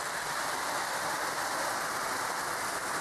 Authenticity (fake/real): real